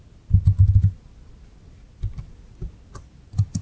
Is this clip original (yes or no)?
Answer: yes